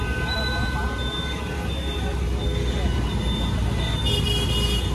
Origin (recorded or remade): recorded